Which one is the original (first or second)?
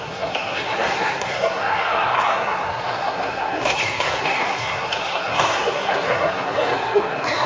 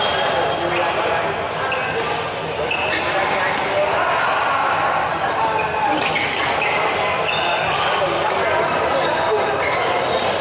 second